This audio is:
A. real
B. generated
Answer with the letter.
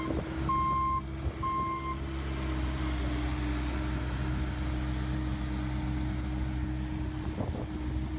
A